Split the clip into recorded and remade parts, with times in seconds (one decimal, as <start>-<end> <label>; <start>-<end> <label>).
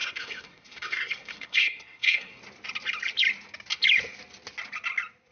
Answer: 0.0-2.4 remade; 2.4-5.3 recorded